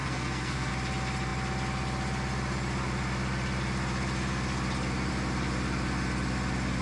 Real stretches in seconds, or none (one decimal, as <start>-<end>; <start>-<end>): 0.7-6.8